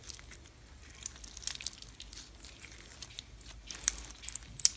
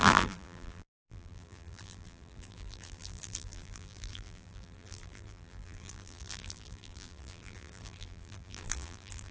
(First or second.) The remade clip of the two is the second